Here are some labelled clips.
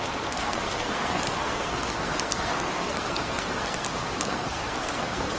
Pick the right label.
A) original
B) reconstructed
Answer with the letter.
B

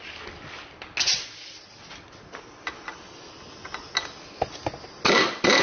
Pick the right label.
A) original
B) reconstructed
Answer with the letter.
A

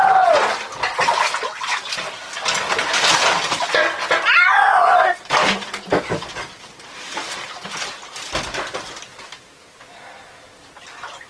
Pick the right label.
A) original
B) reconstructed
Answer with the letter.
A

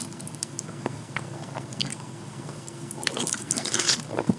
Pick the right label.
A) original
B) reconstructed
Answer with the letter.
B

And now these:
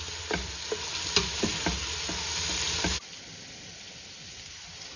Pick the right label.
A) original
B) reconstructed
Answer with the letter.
A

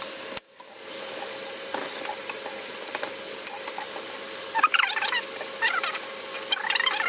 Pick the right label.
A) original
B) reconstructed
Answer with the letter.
B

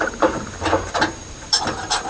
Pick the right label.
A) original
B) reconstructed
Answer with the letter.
B